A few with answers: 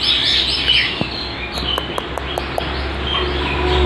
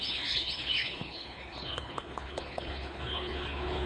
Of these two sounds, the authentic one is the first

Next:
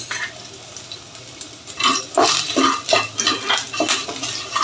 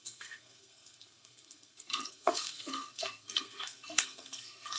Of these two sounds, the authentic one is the first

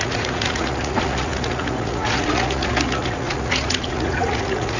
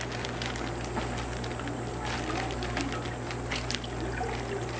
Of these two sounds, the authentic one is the second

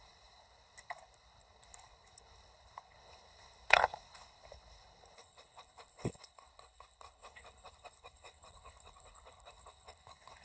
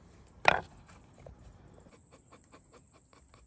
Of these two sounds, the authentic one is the second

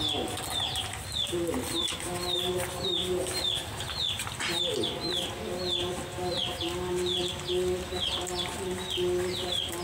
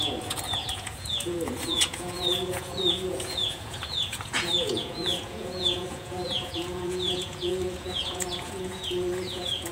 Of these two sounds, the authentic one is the first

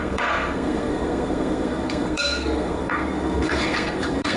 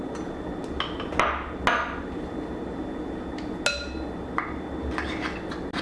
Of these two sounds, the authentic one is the second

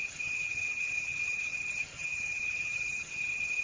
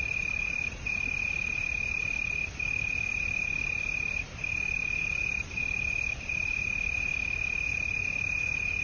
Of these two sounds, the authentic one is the second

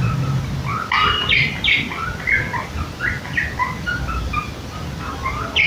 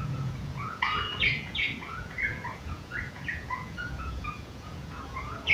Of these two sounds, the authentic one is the first